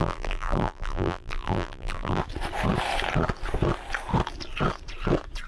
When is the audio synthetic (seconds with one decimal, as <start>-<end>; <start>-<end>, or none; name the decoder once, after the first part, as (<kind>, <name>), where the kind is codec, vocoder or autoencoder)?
0.0-2.2 (vocoder, BigVGAN v2)